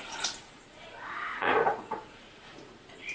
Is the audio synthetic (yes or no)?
yes